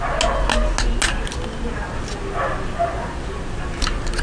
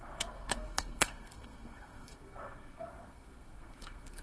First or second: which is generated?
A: second